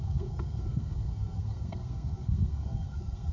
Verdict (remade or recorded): remade